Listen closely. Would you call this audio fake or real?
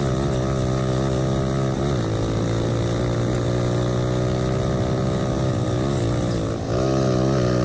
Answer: real